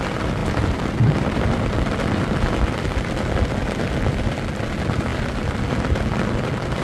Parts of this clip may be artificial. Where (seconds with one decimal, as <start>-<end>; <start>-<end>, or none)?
0.4-2.8; 5.1-6.0